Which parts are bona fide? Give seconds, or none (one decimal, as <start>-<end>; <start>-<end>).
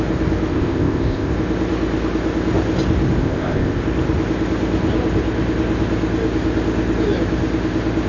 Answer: 0.0-0.5; 1.3-3.2; 3.8-8.1